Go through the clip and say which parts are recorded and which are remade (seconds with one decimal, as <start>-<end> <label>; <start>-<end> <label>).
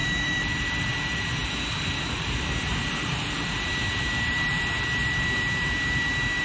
0.0-6.4 remade